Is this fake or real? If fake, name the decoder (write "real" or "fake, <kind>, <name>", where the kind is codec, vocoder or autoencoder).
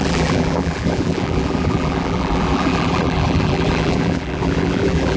fake, vocoder, BigVGAN v2